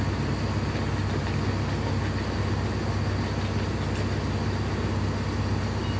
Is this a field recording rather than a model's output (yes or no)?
yes